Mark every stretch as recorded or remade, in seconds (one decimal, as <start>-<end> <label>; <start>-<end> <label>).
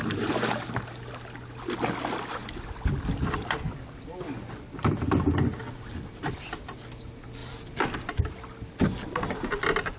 0.0-2.4 recorded; 2.4-4.6 remade; 4.6-7.4 recorded; 7.4-8.2 remade; 8.2-10.0 recorded